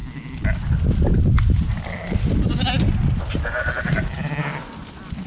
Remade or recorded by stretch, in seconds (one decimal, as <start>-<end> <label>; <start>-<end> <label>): 0.0-5.3 recorded